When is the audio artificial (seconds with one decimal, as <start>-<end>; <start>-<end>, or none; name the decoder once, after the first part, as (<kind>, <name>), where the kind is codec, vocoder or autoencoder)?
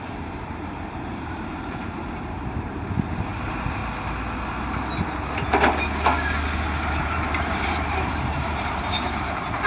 0.0-3.8 (vocoder, BigVGAN v2); 7.0-9.7